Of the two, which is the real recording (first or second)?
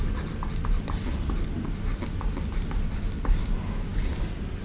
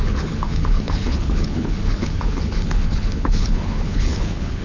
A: first